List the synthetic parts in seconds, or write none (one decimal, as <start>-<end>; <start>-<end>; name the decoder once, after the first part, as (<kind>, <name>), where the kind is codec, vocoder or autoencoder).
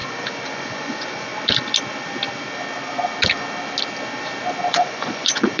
0.0-1.3 (vocoder, Vocos); 4.7-5.6